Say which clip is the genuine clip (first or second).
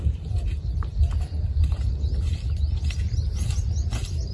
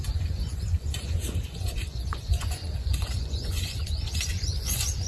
first